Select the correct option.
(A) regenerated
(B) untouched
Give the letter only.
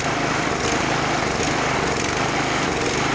B